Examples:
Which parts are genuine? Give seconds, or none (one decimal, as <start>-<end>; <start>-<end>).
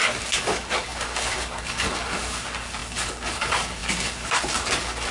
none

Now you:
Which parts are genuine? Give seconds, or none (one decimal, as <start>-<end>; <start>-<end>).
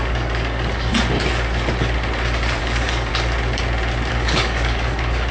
0.9-2.6; 3.1-4.1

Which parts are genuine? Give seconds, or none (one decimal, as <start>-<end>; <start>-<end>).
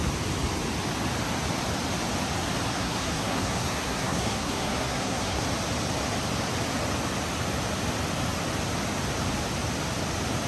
0.0-2.7; 5.4-10.5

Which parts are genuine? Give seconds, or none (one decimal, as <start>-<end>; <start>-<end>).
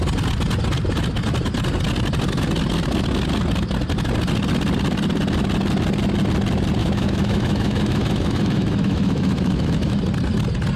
0.0-6.8; 10.0-10.8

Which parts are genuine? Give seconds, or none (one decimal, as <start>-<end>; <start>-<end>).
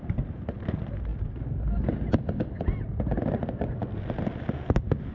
0.0-5.1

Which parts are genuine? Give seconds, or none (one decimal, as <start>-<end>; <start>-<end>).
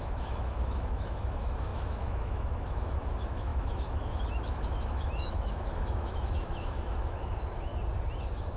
7.7-8.2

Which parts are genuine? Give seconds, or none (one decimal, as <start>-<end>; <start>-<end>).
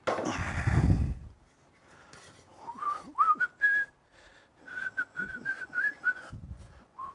0.0-4.8